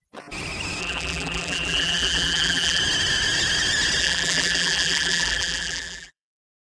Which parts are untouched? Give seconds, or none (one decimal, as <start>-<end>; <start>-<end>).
0.0-0.8; 2.8-4.0